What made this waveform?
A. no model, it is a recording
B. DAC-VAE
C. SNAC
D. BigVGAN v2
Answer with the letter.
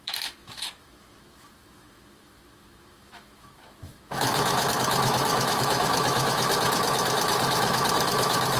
B